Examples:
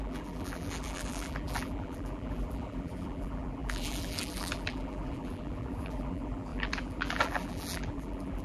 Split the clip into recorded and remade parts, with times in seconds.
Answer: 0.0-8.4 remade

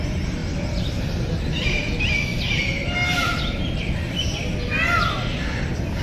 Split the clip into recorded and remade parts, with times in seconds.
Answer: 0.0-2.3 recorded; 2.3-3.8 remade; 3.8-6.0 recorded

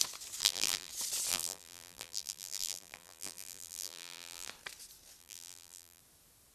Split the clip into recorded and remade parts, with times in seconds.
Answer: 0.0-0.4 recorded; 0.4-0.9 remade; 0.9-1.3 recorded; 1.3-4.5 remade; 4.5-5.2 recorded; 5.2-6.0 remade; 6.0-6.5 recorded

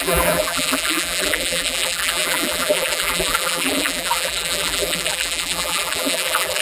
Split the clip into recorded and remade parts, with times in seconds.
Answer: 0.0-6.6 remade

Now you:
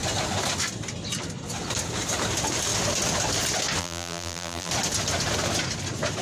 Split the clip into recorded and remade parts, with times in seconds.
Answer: 0.0-3.8 recorded; 3.8-4.7 remade; 4.7-6.2 recorded

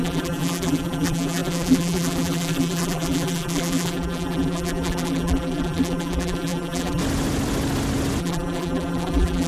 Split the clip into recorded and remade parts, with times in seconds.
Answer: 0.0-7.0 remade; 7.0-8.2 recorded; 8.2-9.5 remade

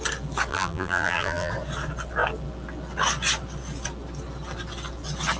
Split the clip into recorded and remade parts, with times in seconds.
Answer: 0.0-0.5 recorded; 0.5-1.5 remade; 1.5-5.4 recorded